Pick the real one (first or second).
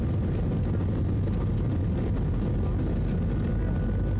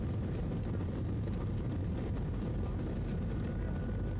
first